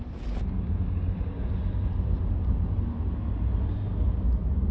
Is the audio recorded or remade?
recorded